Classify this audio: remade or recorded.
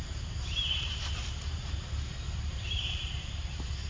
remade